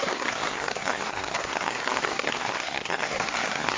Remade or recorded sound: remade